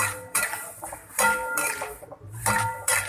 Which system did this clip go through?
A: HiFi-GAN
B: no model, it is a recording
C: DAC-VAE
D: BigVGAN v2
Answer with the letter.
D